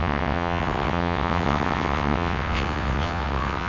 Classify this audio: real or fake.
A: fake